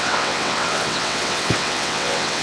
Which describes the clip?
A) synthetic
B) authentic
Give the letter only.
A